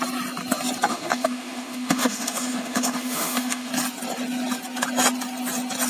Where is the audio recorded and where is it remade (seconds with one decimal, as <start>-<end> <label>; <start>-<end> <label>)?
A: 0.0-0.9 recorded; 0.9-3.7 remade; 3.7-5.9 recorded